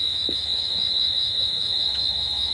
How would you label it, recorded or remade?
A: remade